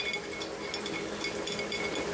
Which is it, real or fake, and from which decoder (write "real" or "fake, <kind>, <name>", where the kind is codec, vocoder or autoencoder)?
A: real